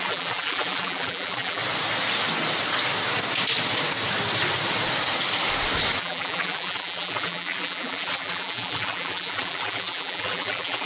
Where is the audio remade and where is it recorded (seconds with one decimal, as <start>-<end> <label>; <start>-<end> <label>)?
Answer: 0.0-1.6 remade; 1.6-6.0 recorded; 6.0-10.9 remade